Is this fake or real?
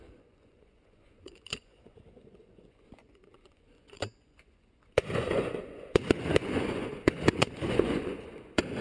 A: fake